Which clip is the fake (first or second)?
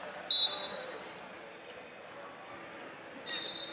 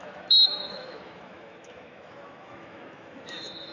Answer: second